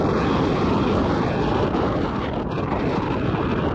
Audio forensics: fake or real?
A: real